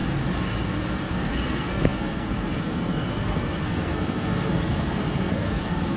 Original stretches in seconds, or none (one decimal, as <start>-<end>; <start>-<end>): 0.0-1.1